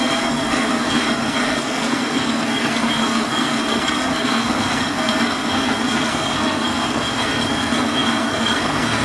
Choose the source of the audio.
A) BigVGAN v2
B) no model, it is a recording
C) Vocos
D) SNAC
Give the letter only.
D